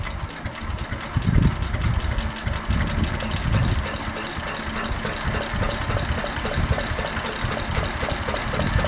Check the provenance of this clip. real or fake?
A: real